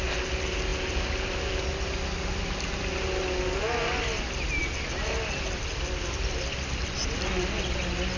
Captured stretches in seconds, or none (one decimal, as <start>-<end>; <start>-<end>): 0.0-8.2